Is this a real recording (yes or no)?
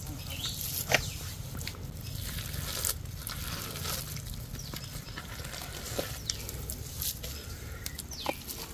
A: yes